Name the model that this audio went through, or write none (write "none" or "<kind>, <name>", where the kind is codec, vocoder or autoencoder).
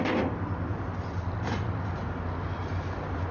none